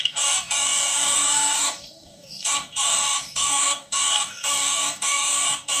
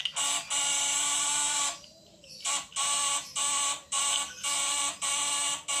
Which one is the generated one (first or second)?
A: first